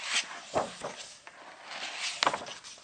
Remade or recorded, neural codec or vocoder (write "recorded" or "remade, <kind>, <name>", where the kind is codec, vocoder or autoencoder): recorded